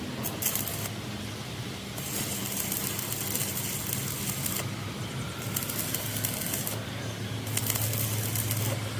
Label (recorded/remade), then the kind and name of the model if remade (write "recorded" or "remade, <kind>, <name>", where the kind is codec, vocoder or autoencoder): recorded